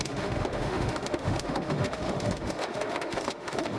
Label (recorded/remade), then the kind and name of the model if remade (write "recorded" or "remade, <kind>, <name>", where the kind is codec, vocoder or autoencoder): remade, autoencoder, DAC-VAE